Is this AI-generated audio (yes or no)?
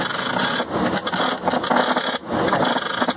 no